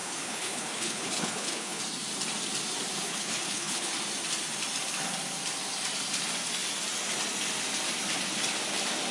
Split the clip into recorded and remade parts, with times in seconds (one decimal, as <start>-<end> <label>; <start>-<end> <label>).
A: 0.0-1.8 remade; 1.8-3.1 recorded; 3.1-3.9 remade; 3.9-9.1 recorded